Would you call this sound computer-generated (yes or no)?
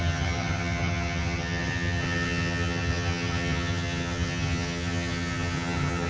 yes